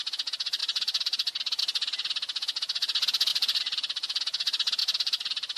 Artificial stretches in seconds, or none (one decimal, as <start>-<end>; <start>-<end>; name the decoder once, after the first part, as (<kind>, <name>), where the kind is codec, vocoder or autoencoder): 0.6-1.6 (vocoder, BigVGAN v2); 3.3-4.2; 4.8-5.6